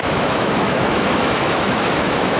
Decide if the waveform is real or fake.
fake